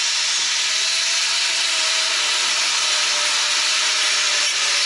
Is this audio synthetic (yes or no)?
no